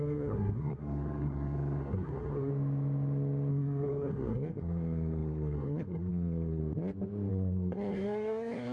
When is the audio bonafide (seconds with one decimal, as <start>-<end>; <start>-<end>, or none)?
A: 2.5-3.5; 6.6-7.3